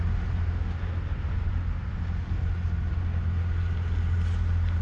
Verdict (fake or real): real